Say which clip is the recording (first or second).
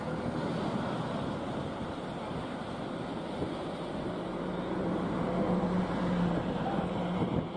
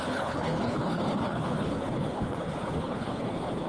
first